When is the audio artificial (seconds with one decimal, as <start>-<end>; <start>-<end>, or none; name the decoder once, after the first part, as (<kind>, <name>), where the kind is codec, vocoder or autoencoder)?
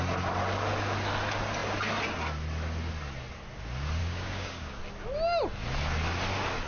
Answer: 4.0-4.8 (codec, DAC)